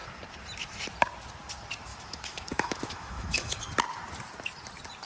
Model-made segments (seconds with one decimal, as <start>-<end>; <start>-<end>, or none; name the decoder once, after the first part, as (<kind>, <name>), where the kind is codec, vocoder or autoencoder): 1.9-3.6 (autoencoder, DAC-VAE)